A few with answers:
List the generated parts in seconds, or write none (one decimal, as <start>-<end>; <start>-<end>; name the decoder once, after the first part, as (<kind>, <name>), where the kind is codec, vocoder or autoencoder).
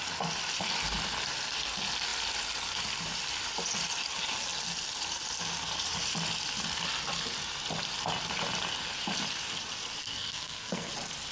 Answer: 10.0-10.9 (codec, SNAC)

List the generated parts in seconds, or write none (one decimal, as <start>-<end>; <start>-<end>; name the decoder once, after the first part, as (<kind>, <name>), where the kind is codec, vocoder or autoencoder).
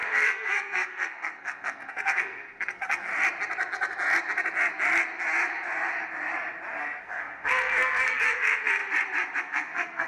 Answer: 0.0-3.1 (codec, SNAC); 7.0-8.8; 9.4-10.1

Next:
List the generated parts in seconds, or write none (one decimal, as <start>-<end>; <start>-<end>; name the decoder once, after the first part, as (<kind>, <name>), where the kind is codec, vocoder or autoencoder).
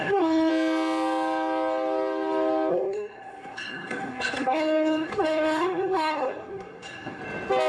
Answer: 0.0-0.5 (codec, SNAC); 2.7-7.2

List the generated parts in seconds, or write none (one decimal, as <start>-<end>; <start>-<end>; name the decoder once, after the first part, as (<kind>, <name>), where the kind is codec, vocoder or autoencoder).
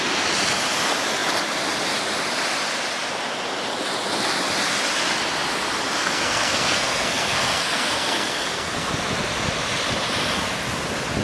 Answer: 6.0-8.9 (codec, SNAC)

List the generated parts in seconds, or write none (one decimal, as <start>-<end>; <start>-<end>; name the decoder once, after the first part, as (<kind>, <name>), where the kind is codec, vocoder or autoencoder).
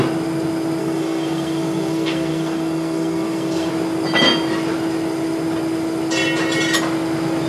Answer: 0.8-3.7 (codec, SNAC)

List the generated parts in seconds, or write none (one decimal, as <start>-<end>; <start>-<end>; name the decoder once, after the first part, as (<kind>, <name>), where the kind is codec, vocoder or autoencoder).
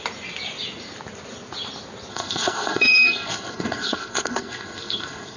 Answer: 2.1-5.4 (codec, SNAC)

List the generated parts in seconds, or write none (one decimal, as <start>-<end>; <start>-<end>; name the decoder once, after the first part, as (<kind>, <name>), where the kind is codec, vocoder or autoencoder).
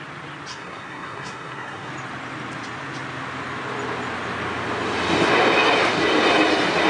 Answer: 0.5-1.9 (codec, SNAC)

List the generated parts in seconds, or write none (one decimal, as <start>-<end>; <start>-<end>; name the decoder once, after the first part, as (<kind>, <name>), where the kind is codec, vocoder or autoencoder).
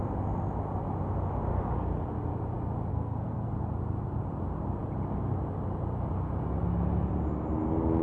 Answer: 2.9-3.5 (codec, SNAC)